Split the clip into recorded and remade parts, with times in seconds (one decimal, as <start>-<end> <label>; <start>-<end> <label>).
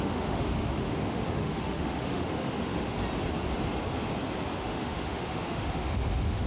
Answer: 0.0-3.0 remade; 3.0-4.6 recorded; 4.6-6.5 remade